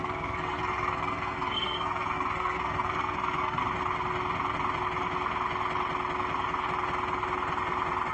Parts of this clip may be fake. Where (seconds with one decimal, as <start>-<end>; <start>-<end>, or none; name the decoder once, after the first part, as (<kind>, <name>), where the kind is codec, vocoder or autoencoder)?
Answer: 0.0-3.6 (codec, SNAC)